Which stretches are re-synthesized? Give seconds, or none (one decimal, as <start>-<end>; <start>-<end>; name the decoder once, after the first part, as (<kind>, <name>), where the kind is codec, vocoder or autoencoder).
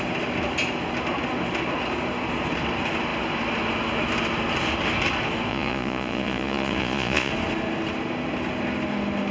5.5-7.3 (vocoder, Vocos)